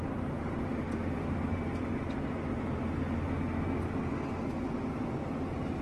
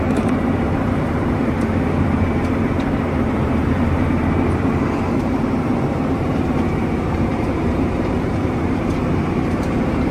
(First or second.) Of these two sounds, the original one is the first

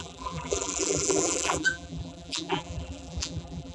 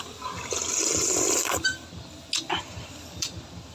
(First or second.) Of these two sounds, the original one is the second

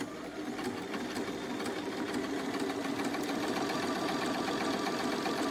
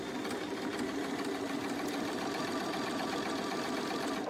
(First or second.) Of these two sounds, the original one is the first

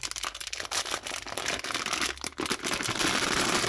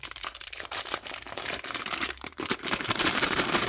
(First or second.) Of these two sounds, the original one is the first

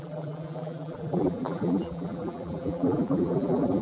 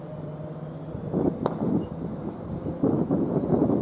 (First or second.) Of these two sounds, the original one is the second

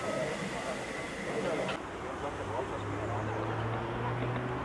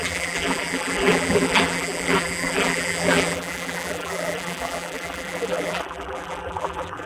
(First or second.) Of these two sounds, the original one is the first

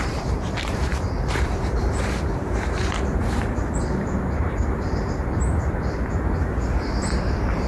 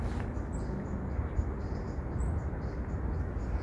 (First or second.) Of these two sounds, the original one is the second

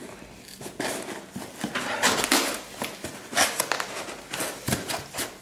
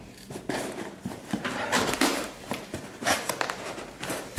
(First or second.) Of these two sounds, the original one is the first